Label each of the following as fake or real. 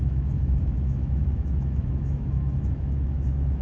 fake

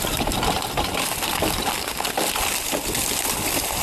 real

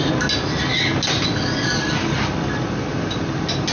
real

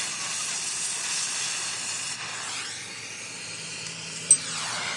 real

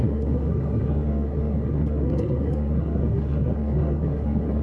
fake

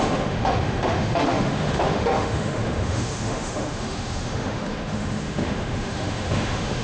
fake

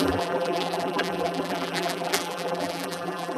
fake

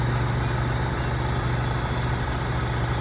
real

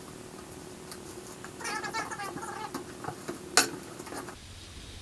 real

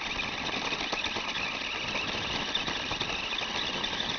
real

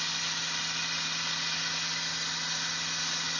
real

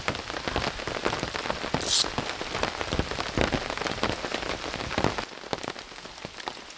real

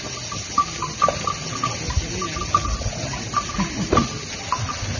real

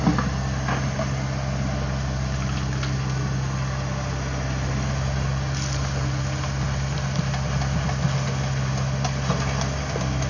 real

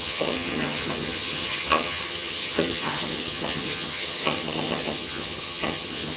fake